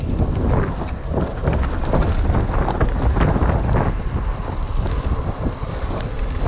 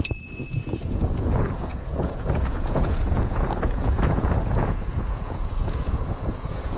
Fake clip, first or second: second